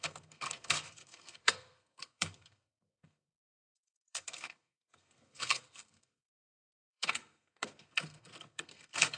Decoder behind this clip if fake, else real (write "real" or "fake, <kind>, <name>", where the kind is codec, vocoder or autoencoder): fake, codec, SNAC